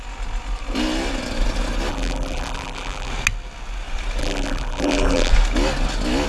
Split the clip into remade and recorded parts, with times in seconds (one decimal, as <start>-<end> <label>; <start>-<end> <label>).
0.0-1.9 recorded; 1.9-3.1 remade; 3.1-4.2 recorded; 4.2-5.3 remade; 5.3-6.3 recorded